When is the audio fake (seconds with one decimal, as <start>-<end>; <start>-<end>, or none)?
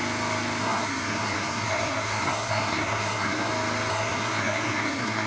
0.6-3.5; 3.9-5.3